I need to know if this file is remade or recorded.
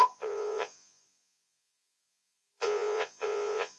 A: remade